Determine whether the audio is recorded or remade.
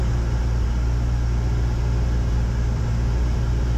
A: recorded